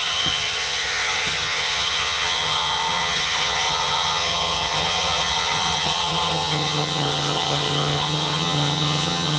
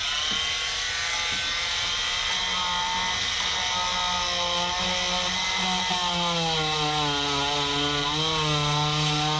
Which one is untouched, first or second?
second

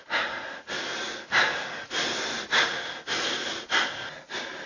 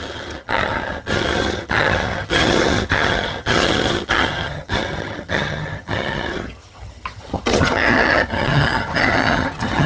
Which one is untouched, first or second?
first